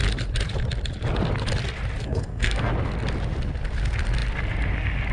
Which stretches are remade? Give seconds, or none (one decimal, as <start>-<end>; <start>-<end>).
2.1-2.7